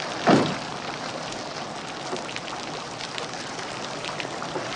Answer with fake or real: real